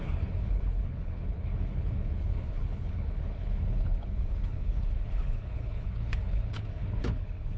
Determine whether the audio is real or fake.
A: fake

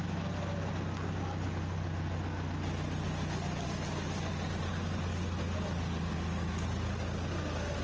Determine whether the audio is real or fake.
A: real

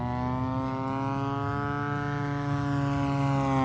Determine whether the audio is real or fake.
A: real